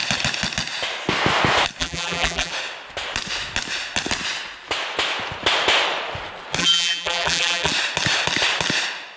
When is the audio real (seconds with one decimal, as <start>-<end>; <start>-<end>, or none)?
0.0-1.8; 2.5-6.6; 7.7-9.2